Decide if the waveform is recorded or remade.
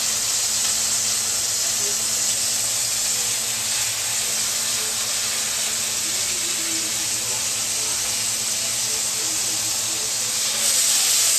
recorded